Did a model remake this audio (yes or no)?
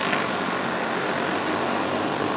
no